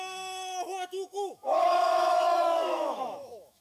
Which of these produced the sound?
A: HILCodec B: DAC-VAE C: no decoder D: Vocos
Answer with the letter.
B